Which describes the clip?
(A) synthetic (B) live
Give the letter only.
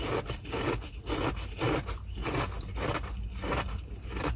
B